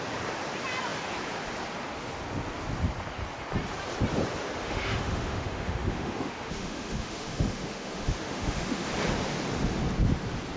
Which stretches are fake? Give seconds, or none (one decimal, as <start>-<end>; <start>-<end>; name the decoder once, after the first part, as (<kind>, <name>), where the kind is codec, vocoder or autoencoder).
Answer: 4.6-8.9 (autoencoder, DAC-VAE)